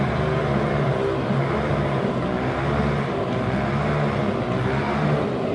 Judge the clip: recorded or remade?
recorded